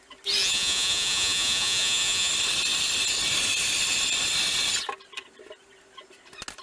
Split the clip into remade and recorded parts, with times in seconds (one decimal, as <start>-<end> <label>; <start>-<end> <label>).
0.0-0.4 recorded; 0.4-2.3 remade; 2.3-6.6 recorded